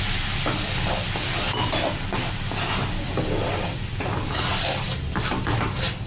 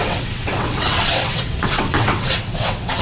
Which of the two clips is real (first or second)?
first